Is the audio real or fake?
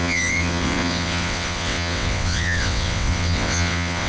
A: fake